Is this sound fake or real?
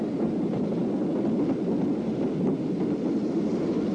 real